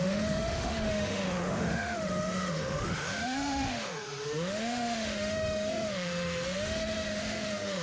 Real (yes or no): no